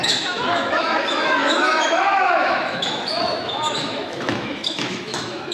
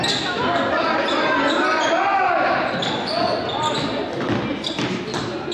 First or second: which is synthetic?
first